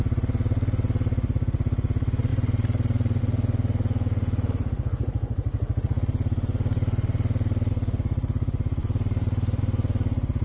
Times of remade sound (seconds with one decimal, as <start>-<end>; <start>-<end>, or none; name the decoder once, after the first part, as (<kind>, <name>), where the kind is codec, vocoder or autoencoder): 2.3-3.2 (vocoder, BigVGAN v2); 8.8-9.6